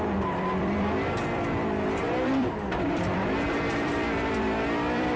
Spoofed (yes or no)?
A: yes